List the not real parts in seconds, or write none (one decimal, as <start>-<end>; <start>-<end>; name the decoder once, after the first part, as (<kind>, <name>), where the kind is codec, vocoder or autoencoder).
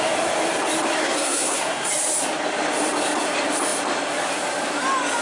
1.0-1.9 (codec, SNAC)